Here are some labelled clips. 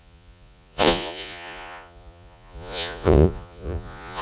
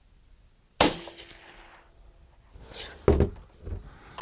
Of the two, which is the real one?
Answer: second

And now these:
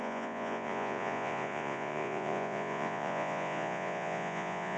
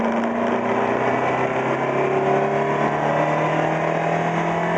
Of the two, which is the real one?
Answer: second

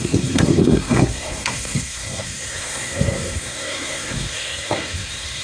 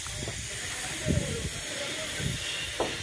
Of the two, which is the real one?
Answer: second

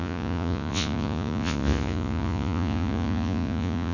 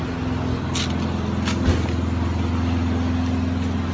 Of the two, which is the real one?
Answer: second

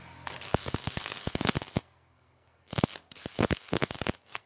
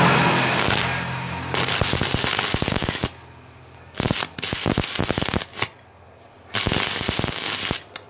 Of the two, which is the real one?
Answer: second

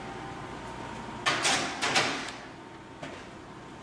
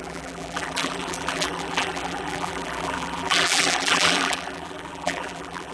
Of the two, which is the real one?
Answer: first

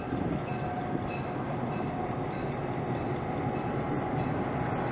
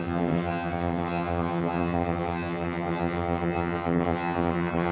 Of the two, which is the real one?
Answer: first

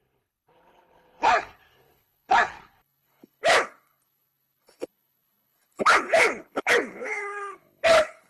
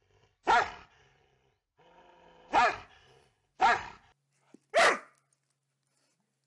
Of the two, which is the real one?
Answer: second